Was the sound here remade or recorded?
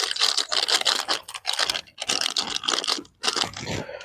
recorded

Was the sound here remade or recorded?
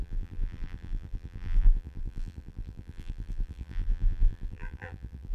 remade